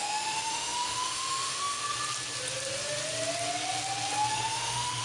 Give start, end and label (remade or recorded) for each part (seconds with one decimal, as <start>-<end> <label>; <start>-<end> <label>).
0.0-1.8 remade; 1.8-4.3 recorded; 4.3-5.0 remade